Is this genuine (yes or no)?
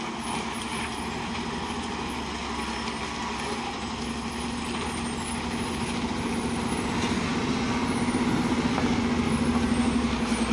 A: yes